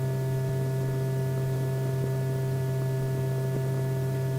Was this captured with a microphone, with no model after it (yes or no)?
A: yes